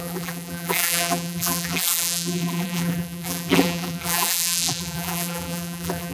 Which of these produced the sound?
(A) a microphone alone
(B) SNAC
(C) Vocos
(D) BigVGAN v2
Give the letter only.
D